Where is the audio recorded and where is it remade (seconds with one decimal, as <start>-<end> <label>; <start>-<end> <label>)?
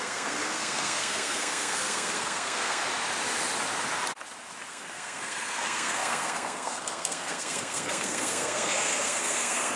0.0-2.8 remade; 2.8-4.7 recorded; 4.7-9.8 remade